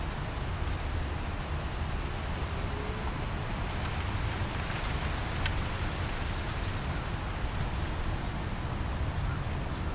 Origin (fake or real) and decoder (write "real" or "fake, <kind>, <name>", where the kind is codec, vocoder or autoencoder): real